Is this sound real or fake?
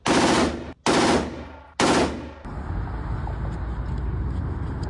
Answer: real